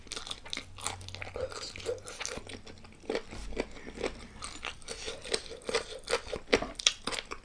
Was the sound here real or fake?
real